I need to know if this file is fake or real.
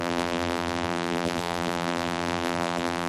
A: fake